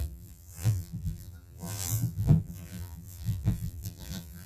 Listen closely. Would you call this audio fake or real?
fake